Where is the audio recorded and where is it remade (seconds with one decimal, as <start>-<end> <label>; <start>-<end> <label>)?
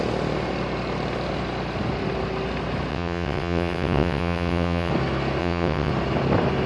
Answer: 0.0-2.9 recorded; 2.9-4.9 remade; 4.9-5.4 recorded; 5.4-5.9 remade; 5.9-6.7 recorded